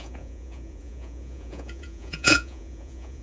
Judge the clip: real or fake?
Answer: fake